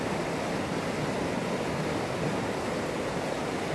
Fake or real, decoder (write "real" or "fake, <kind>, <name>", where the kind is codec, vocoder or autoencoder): real